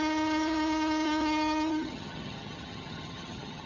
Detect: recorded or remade remade